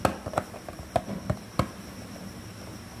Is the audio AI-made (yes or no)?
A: no